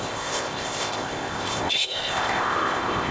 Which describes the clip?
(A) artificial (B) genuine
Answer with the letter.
A